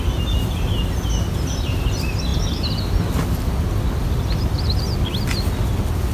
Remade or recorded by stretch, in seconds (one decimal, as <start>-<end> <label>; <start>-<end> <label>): 0.0-6.1 recorded